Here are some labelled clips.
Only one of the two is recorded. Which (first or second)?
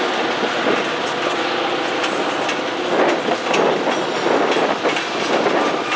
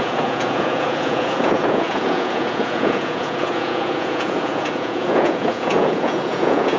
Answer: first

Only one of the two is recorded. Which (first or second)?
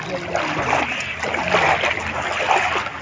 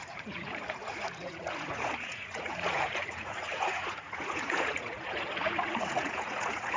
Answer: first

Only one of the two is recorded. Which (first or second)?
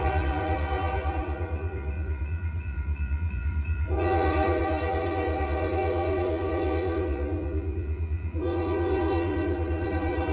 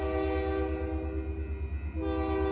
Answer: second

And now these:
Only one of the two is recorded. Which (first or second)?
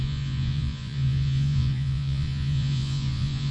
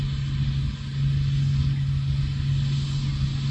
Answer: second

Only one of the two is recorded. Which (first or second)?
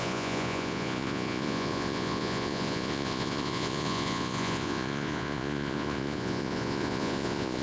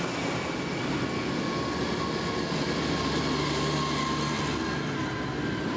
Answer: second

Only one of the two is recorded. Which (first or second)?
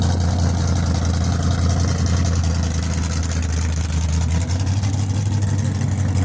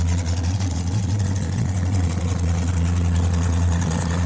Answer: first